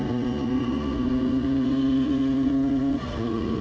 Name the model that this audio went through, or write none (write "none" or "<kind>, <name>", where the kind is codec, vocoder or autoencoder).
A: vocoder, Vocos